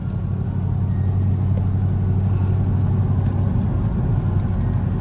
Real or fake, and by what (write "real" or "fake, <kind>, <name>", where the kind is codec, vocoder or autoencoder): real